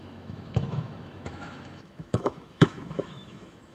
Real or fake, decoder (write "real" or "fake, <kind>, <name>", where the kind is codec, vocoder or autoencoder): fake, autoencoder, DAC-VAE